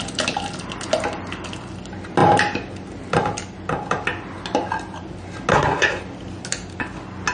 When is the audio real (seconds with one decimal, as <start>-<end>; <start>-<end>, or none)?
0.0-5.5; 6.0-7.3